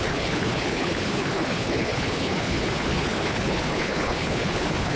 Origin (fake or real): fake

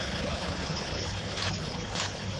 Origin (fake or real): fake